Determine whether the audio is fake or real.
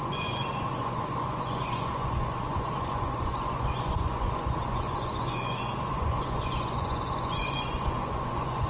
fake